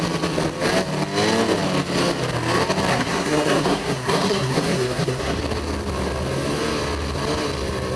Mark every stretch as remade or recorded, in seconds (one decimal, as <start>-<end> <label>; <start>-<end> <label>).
0.0-2.9 recorded; 2.9-5.4 remade; 5.4-8.0 recorded